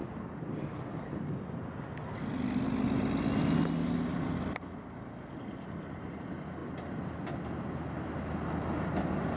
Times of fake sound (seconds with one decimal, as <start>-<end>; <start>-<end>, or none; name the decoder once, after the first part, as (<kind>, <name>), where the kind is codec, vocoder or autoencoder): none